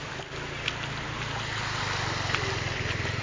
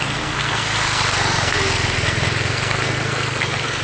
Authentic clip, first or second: first